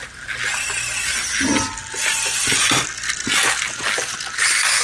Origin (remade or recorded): recorded